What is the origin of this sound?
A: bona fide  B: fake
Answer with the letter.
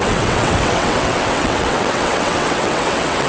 B